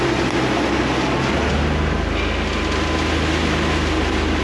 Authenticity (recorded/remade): recorded